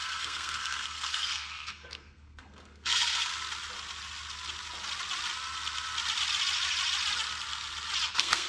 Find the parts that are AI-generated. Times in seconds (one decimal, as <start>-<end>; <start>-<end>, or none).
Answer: 0.0-3.3; 8.1-8.5